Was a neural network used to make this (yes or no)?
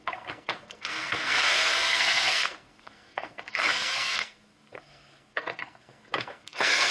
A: yes